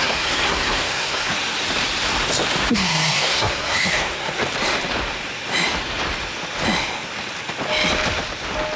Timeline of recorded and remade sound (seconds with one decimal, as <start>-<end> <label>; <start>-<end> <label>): 0.0-1.3 remade; 1.3-2.7 recorded; 2.7-4.4 remade; 4.4-8.8 recorded